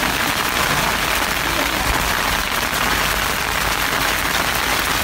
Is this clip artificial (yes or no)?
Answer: no